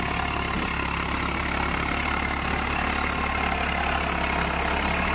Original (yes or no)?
yes